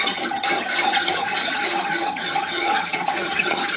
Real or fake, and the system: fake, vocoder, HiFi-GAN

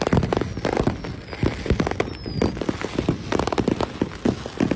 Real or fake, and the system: real